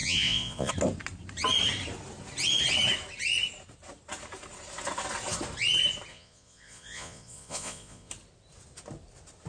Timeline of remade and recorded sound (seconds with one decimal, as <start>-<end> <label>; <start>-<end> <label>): 0.0-0.7 remade; 0.7-6.1 recorded; 6.1-8.1 remade; 8.1-9.5 recorded